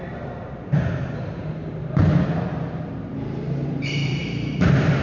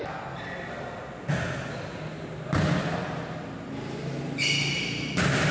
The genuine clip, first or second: second